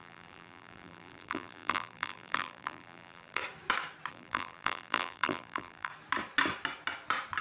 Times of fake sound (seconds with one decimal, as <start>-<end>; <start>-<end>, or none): 0.0-3.4; 4.1-5.9